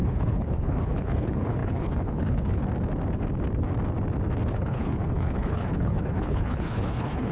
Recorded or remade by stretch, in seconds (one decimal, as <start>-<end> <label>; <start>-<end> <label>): 0.0-2.6 remade; 2.6-4.5 recorded; 4.5-7.3 remade